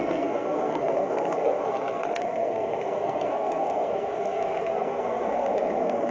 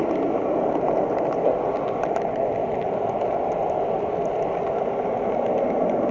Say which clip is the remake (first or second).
first